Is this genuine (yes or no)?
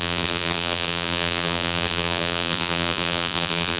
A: no